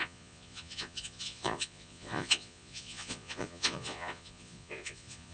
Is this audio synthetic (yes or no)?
yes